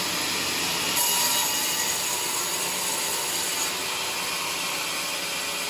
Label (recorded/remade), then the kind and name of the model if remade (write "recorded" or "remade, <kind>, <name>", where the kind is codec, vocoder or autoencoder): recorded